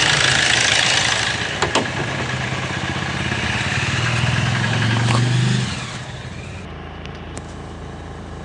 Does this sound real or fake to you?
real